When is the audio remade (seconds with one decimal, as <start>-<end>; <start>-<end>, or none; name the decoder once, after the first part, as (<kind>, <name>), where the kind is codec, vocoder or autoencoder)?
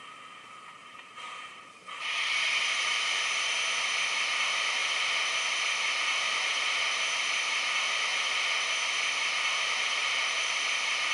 0.8-3.2 (vocoder, BigVGAN v2); 10.0-10.6